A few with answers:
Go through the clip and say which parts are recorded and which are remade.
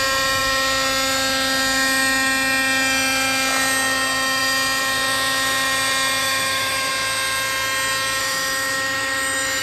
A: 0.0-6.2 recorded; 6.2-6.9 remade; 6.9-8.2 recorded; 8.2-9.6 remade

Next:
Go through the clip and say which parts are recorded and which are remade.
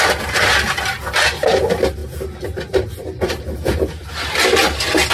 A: 0.0-5.1 recorded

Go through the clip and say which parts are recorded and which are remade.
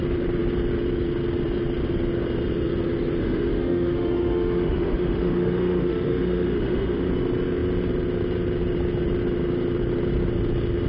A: 0.0-3.2 recorded; 3.2-7.1 remade; 7.1-10.9 recorded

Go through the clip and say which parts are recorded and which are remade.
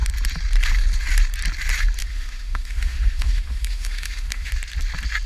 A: 0.0-2.0 recorded; 2.0-4.5 remade; 4.5-5.3 recorded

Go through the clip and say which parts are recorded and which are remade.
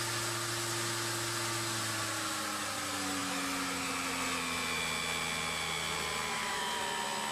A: 0.0-3.2 recorded; 3.2-3.9 remade; 3.9-6.3 recorded; 6.3-6.8 remade; 6.8-7.3 recorded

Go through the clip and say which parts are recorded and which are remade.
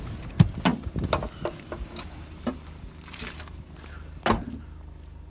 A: 0.0-5.3 recorded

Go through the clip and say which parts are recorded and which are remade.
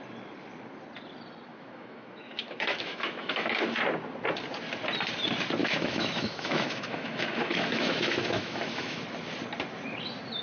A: 0.0-1.5 recorded; 1.5-3.6 remade; 3.6-5.6 recorded; 5.6-9.0 remade; 9.0-10.4 recorded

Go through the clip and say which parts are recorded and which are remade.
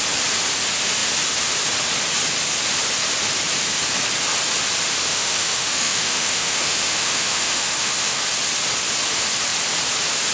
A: 0.0-5.1 recorded; 5.1-8.2 remade; 8.2-10.3 recorded